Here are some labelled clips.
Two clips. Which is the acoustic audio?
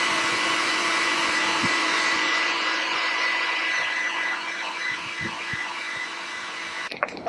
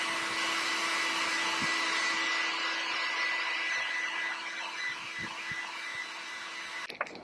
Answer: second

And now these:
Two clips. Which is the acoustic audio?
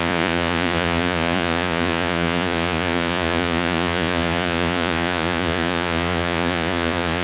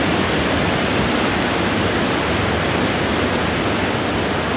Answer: second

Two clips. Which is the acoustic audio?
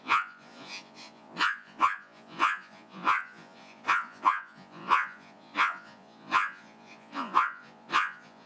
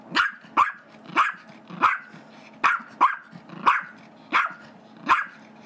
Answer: second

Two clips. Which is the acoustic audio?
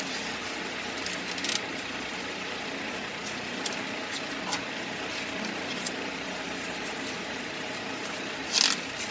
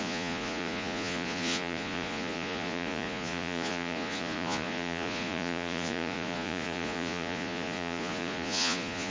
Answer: first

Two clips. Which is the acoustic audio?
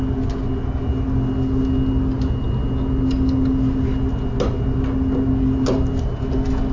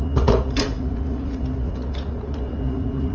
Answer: first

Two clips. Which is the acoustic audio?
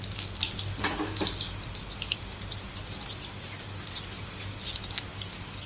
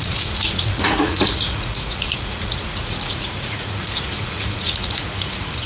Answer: first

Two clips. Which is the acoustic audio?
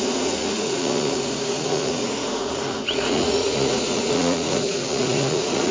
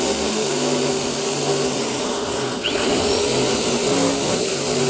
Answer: second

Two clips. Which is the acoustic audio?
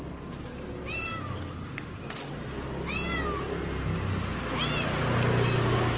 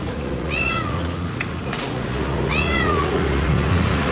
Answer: first